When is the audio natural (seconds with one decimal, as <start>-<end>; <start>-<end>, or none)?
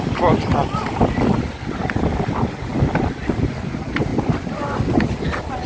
4.1-5.0